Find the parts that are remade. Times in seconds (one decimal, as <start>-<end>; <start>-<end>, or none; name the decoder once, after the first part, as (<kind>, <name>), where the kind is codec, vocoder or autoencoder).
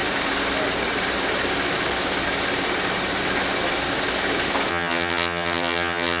4.7-6.2 (vocoder, HiFi-GAN)